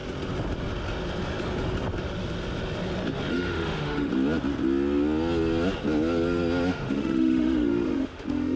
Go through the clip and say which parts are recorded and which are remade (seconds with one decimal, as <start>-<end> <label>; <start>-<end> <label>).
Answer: 0.0-3.3 recorded; 3.3-4.1 remade; 4.1-6.7 recorded; 6.7-8.6 remade